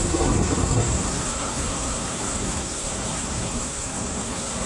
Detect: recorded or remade remade